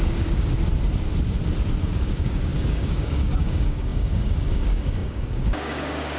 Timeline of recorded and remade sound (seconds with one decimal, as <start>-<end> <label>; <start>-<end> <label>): 0.0-0.5 remade; 0.5-1.8 recorded; 1.8-6.2 remade